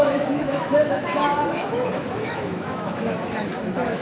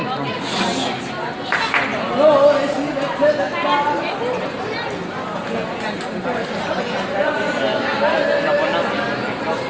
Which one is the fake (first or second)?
first